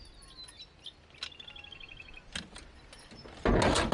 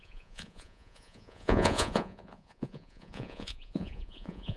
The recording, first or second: first